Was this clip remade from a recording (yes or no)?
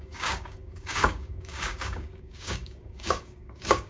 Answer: yes